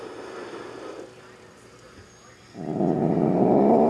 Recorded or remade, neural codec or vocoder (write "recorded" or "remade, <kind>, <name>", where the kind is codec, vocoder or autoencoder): recorded